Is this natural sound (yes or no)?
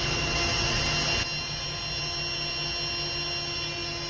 yes